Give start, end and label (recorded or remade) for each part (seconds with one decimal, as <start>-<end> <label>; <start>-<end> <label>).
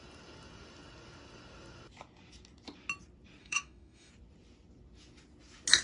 0.0-3.4 recorded; 3.4-4.1 remade; 4.1-5.8 recorded